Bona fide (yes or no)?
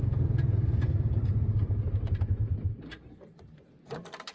yes